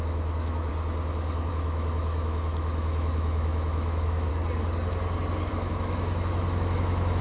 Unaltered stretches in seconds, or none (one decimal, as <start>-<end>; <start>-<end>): 0.7-1.5; 4.3-5.5